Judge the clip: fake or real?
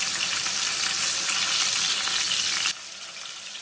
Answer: real